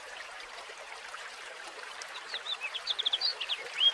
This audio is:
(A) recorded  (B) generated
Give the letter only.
B